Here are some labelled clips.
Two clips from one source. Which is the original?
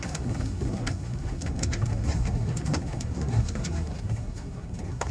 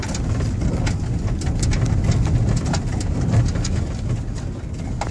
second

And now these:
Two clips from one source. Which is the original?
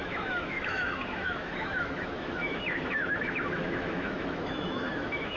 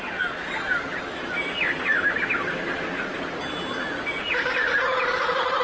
second